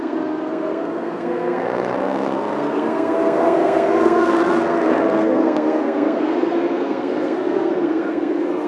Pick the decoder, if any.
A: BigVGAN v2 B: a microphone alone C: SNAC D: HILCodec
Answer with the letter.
C